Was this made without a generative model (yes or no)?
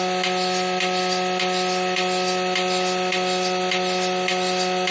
yes